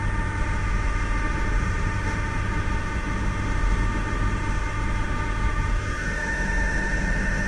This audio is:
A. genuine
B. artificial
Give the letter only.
B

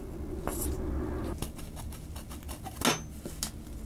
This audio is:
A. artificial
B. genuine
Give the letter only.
B